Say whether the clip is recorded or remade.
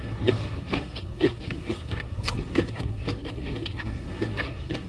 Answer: remade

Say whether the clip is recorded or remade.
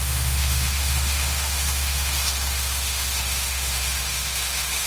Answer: remade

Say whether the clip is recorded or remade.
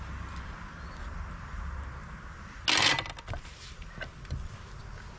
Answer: recorded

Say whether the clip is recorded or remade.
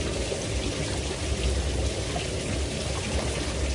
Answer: recorded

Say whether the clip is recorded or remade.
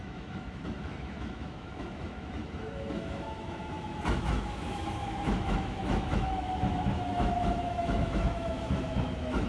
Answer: remade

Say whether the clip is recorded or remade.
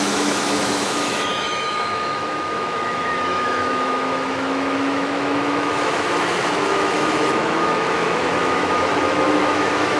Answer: remade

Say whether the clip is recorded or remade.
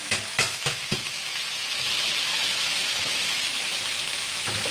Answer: remade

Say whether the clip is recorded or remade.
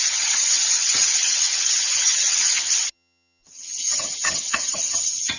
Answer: remade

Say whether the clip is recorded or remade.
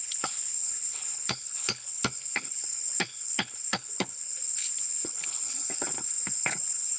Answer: remade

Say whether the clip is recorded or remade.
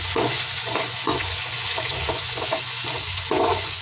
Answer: remade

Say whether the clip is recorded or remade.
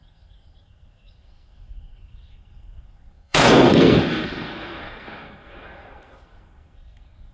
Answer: remade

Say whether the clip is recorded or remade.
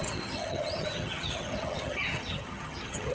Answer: remade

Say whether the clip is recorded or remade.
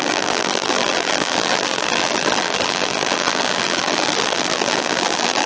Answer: remade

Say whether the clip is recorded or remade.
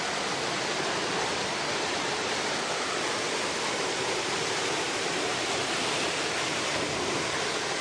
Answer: remade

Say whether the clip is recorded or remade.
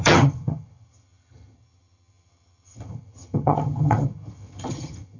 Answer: remade